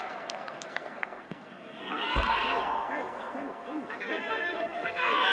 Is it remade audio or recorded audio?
remade